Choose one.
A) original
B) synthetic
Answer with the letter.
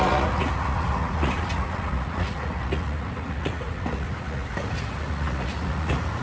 B